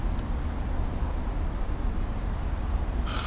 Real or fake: real